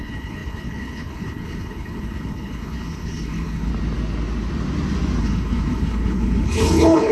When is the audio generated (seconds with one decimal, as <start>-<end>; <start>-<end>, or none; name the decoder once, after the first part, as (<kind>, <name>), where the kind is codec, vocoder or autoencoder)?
0.0-3.7 (codec, HILCodec); 5.2-7.1